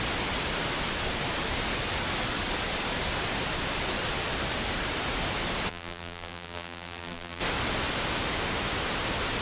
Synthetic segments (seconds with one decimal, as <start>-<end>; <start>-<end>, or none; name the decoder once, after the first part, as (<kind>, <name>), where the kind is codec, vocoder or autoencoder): 5.7-7.4 (vocoder, BigVGAN v2)